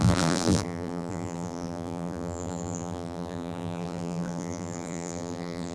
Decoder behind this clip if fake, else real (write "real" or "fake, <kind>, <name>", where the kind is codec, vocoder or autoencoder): fake, vocoder, BigVGAN v2